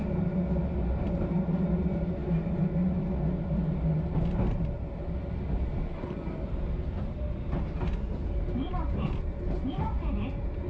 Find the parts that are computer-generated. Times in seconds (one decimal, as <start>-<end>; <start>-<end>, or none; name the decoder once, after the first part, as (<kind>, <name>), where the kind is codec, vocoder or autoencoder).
8.7-9.7 (vocoder, BigVGAN v2)